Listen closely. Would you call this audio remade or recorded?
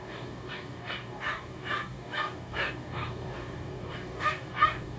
remade